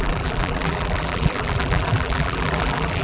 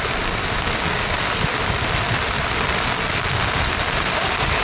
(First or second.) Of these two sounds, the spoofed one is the first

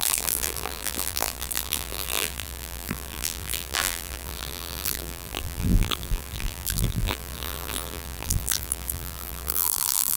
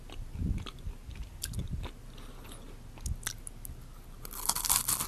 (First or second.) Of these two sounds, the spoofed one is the first